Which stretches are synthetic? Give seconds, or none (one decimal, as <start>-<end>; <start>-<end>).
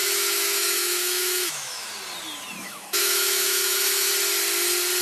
0.0-1.9; 2.6-4.1